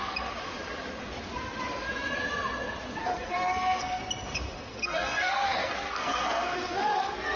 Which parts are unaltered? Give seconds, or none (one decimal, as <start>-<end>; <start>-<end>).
0.0-3.0; 4.0-4.7